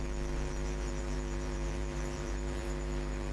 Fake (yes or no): yes